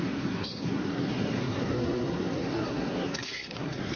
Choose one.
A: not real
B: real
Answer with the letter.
A